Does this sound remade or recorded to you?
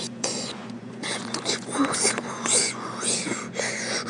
remade